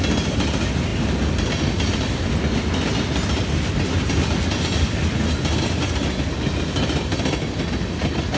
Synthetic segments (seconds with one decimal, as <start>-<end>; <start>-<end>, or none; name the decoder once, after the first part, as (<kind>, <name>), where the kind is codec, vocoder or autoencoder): none